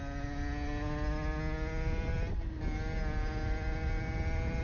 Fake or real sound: real